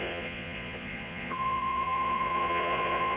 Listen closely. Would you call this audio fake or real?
fake